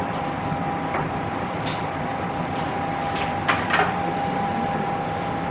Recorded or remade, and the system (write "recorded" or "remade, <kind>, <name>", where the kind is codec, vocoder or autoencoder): recorded